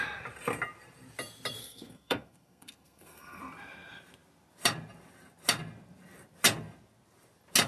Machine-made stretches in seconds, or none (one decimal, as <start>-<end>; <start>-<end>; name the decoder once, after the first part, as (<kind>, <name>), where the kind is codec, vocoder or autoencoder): 1.6-3.4 (codec, SNAC)